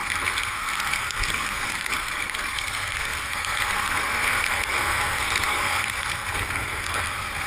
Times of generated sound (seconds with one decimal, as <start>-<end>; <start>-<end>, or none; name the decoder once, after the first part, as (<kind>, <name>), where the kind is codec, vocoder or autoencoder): 0.0-7.5 (codec, SNAC)